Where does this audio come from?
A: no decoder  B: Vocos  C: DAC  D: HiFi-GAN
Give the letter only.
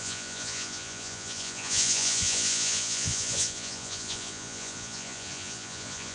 B